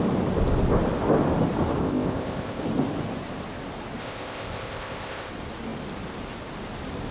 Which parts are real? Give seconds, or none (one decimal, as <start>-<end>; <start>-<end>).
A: 0.0-1.8; 2.6-4.0; 5.3-7.1